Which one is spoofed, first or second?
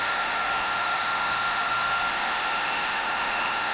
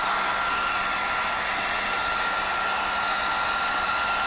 first